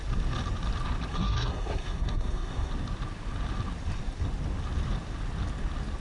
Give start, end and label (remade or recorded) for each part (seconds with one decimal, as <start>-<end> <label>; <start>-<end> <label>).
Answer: 0.0-1.1 recorded; 1.1-2.7 remade; 2.7-6.0 recorded